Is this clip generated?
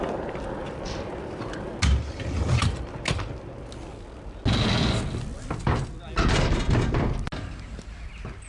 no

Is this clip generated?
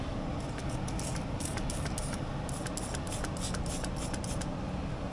no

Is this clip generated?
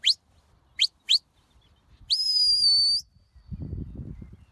no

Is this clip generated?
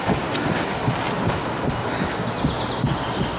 no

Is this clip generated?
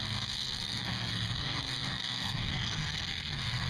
yes